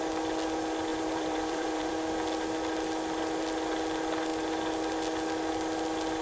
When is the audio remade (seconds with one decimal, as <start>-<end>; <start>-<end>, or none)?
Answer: 0.9-1.9